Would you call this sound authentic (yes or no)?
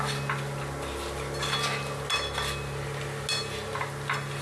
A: yes